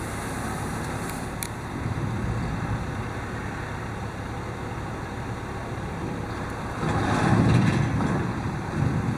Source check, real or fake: fake